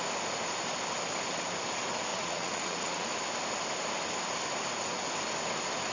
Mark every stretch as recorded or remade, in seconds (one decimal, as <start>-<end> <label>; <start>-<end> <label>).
0.0-2.1 recorded; 2.1-3.1 remade; 3.1-5.9 recorded